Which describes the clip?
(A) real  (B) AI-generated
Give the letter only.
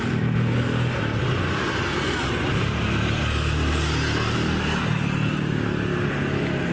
A